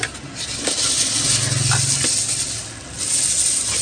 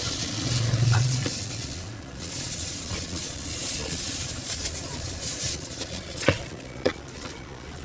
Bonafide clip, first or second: first